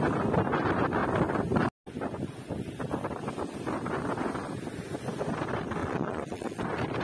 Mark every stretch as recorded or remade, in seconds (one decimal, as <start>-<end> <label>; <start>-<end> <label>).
0.0-5.8 recorded; 5.8-6.6 remade; 6.6-7.0 recorded